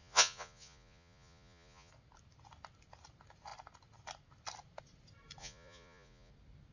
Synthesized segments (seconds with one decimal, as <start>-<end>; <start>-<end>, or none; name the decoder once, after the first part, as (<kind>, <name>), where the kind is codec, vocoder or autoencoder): 0.0-1.9 (vocoder, Vocos); 5.4-6.3